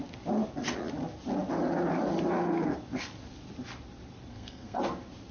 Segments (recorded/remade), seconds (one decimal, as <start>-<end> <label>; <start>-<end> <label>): 0.0-4.3 recorded; 4.3-4.8 remade; 4.8-5.3 recorded